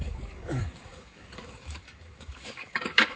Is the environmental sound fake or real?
fake